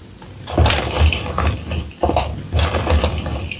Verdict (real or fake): real